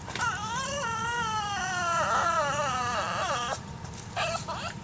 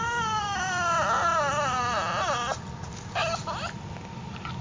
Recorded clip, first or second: second